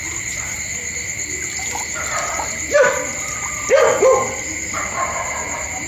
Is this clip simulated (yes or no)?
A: no